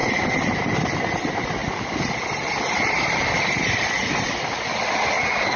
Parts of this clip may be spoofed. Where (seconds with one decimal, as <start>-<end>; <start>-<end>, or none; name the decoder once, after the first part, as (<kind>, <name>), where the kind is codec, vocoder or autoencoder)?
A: 1.6-3.9 (vocoder, BigVGAN v2)